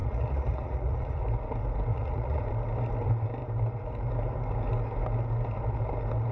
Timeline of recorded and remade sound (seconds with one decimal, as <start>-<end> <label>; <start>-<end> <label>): 0.0-1.2 remade; 1.2-1.9 recorded; 1.9-2.4 remade; 2.4-6.3 recorded